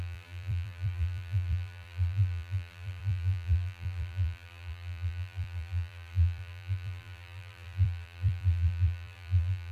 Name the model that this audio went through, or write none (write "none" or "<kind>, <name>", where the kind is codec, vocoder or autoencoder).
vocoder, BigVGAN v2